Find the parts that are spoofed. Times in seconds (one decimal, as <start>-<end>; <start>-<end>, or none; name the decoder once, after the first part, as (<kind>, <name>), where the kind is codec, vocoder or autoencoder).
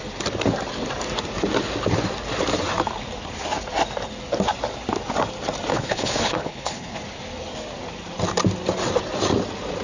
5.7-7.0 (codec, HILCodec)